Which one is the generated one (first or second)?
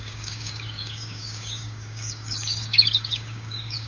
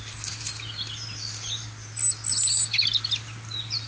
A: first